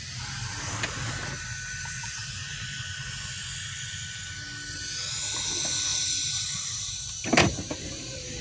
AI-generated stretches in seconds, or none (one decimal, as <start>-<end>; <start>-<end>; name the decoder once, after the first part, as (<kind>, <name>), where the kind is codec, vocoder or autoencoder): 5.9-8.4 (vocoder, BigVGAN v2)